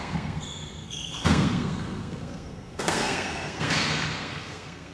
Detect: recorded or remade remade